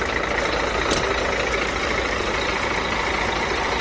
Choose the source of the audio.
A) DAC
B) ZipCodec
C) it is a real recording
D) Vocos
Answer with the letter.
C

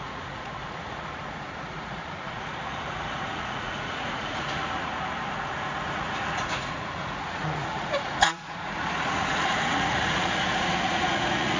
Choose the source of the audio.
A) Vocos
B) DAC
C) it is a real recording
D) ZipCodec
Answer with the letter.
A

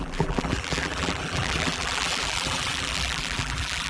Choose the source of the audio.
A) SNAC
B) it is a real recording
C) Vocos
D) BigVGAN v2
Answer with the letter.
D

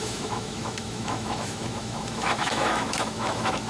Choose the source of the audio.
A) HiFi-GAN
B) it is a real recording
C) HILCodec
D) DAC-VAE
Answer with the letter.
D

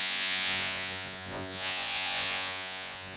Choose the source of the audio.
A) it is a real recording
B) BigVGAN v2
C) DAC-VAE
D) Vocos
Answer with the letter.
D